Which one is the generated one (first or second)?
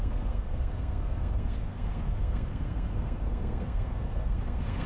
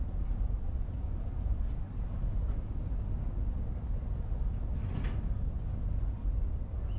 first